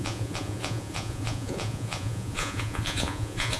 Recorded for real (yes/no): no